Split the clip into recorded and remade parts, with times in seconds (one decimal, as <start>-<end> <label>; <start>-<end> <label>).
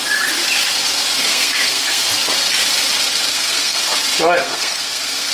0.0-1.3 recorded; 1.3-2.1 remade; 2.1-3.3 recorded; 3.3-3.8 remade; 3.8-4.4 recorded; 4.4-5.3 remade